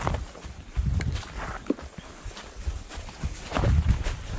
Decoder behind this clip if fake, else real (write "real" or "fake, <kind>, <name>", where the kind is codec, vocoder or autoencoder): real